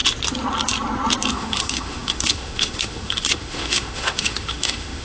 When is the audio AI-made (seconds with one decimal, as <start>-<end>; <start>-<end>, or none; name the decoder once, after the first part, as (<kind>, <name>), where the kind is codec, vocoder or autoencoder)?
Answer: 1.3-5.0 (autoencoder, DAC-VAE)